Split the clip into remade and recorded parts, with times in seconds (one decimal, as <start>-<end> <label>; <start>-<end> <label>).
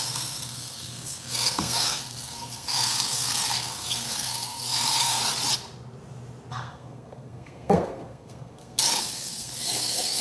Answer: 0.0-5.2 remade; 5.2-6.5 recorded; 6.5-10.2 remade